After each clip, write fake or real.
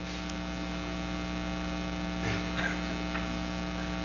real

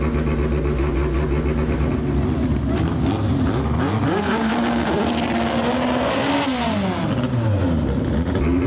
real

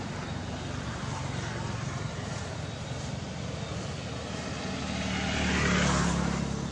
real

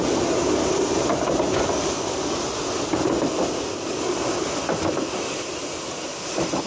real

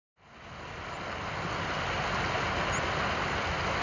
real